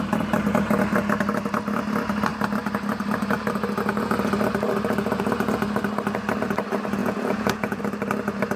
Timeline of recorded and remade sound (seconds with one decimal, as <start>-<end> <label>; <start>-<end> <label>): 0.0-7.0 recorded; 7.0-7.8 remade; 7.8-8.6 recorded